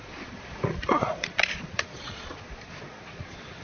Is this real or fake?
fake